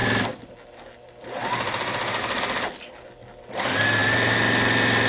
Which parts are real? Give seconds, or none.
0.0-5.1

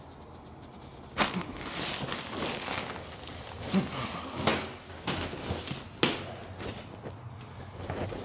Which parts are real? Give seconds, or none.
0.0-8.2

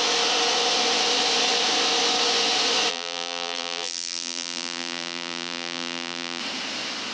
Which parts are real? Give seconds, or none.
0.0-2.9; 6.4-7.1

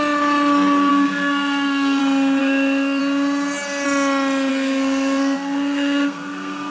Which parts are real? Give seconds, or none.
0.0-0.9; 2.0-2.4; 3.0-4.5

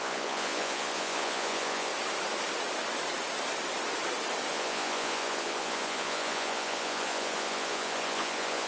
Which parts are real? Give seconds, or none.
1.9-4.5

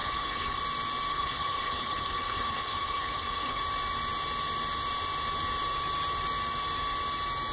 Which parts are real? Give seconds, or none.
0.6-1.1; 3.6-7.5